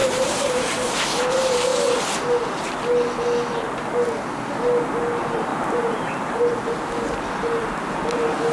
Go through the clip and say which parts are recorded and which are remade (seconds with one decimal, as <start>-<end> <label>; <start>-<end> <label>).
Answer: 0.0-1.0 remade; 1.0-5.5 recorded; 5.5-6.4 remade; 6.4-8.5 recorded